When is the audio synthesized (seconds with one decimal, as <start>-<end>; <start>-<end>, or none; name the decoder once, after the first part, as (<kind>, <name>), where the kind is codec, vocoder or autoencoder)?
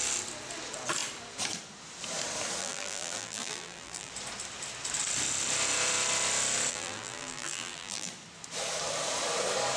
2.6-4.1 (vocoder, BigVGAN v2); 6.7-8.1